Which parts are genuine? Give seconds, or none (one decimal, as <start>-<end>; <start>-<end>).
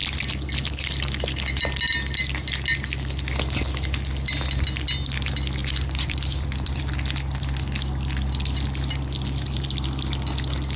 0.0-5.6; 6.8-10.8